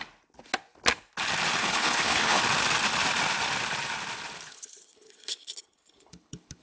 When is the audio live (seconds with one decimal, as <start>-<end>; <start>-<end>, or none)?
0.0-1.6; 2.4-4.5